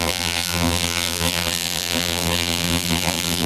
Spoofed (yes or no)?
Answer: yes